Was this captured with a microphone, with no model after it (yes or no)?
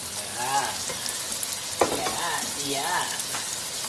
yes